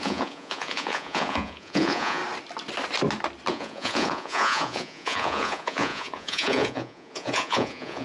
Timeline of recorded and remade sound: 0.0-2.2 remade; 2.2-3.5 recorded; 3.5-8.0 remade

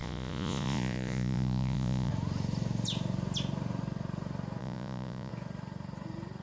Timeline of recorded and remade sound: 0.0-2.1 remade; 2.1-4.6 recorded; 4.6-5.3 remade; 5.3-6.4 recorded

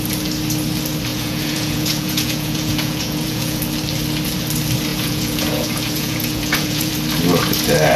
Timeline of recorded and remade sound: 0.0-1.1 recorded; 1.1-3.6 remade; 3.6-4.9 recorded; 4.9-6.9 remade; 6.9-8.0 recorded

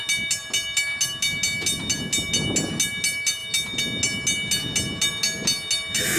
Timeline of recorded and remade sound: 0.0-6.2 recorded

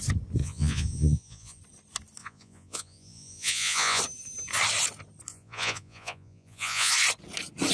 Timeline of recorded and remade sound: 0.0-0.4 recorded; 0.4-1.6 remade; 1.6-2.2 recorded; 2.2-4.0 remade; 4.0-5.3 recorded; 5.3-6.9 remade; 6.9-7.7 recorded

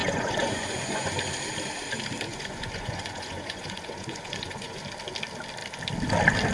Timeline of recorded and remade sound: 0.0-1.2 remade; 1.2-2.3 recorded; 2.3-4.8 remade; 4.8-6.5 recorded